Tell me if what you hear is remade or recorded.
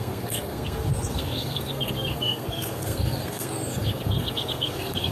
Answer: remade